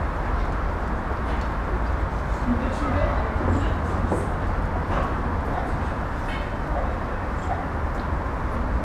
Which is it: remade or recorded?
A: recorded